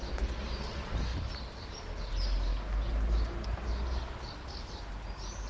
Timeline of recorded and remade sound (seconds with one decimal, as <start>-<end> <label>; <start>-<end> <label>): 0.0-1.1 recorded; 1.1-1.8 remade; 1.8-5.5 recorded